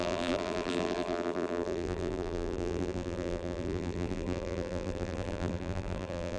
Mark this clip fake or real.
fake